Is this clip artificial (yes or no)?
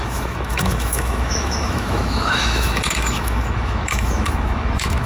yes